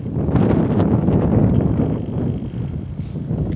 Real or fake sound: real